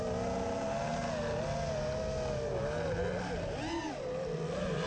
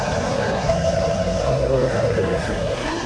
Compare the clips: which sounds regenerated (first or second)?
second